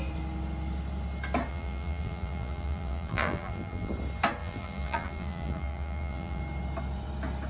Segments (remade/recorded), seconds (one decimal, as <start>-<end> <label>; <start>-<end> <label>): 0.0-1.5 recorded; 1.5-3.9 remade; 3.9-4.4 recorded; 4.4-6.4 remade; 6.4-7.5 recorded